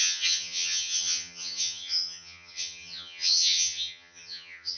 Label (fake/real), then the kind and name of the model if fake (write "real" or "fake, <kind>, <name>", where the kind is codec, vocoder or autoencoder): fake, vocoder, HiFi-GAN